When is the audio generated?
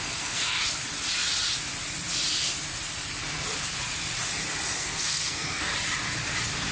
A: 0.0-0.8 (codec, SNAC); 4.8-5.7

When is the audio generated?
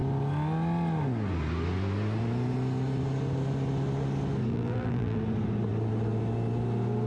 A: 4.5-5.2 (vocoder, BigVGAN v2)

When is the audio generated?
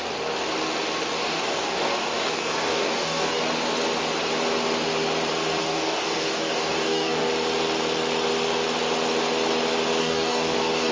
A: 1.2-3.4 (codec, DAC); 5.6-7.3; 10.0-10.9